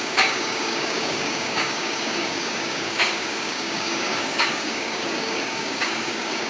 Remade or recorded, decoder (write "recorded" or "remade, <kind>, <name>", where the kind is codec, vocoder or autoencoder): remade, codec, DAC